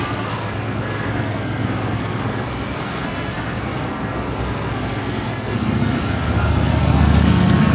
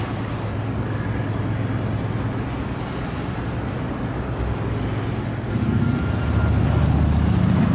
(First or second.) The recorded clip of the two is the second